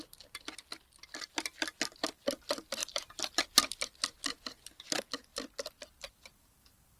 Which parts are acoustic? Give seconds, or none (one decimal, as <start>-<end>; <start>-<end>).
0.0-2.8; 3.4-5.3